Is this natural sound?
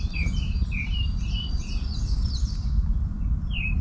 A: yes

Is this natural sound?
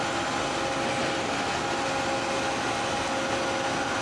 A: yes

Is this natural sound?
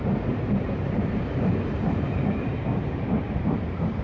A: no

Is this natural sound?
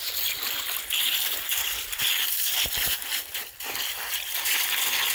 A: yes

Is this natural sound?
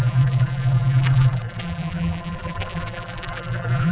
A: no